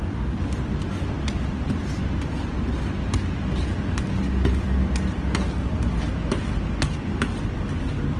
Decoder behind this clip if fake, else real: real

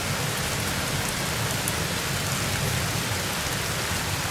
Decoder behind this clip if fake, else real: real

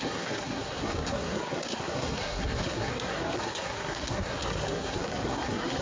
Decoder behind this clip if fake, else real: fake, codec, SNAC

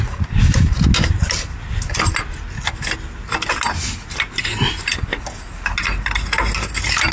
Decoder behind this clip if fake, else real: real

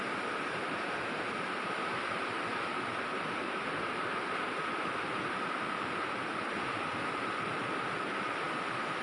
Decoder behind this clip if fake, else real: fake, vocoder, BigVGAN v2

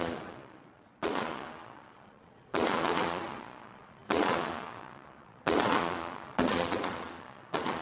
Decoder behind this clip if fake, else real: fake, vocoder, Vocos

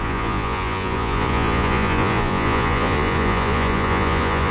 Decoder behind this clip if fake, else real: fake, vocoder, Vocos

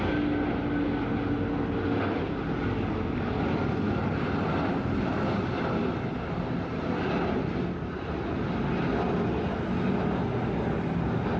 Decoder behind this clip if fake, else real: real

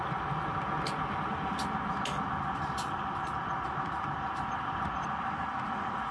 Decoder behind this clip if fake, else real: real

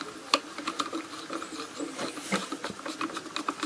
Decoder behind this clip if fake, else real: real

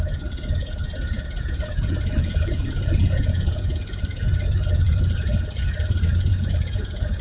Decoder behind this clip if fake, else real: fake, vocoder, Vocos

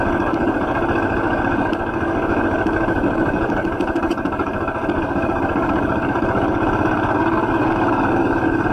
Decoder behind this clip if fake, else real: fake, codec, DAC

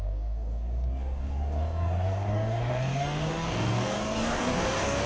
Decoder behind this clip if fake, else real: fake, codec, DAC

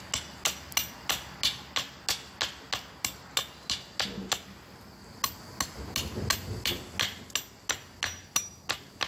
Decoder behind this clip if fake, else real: real